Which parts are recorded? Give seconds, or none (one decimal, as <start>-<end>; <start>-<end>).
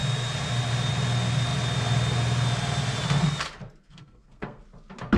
0.0-3.8; 4.6-5.2